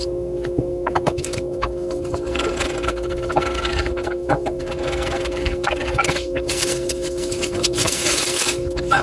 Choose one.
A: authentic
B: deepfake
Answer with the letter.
B